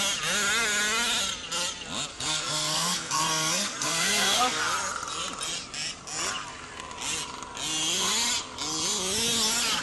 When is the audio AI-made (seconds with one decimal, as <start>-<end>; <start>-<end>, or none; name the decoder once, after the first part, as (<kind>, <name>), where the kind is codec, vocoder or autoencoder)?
2.1-4.6 (codec, SNAC)